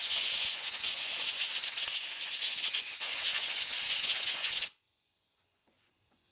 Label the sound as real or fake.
fake